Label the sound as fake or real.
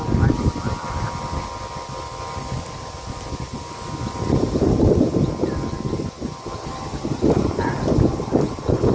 real